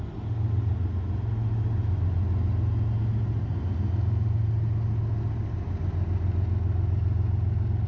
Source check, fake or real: real